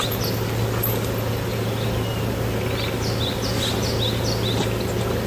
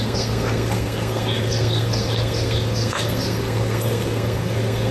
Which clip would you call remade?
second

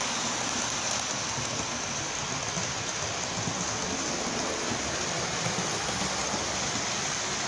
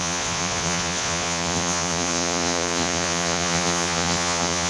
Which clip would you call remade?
second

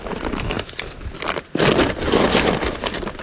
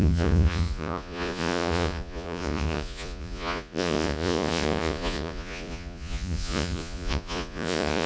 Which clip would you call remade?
second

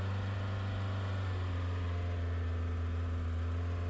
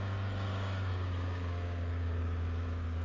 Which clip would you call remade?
second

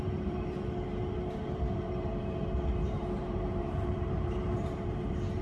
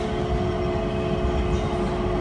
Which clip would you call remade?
first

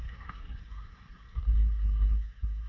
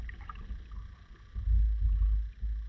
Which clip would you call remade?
first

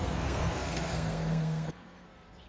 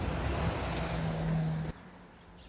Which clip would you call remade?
first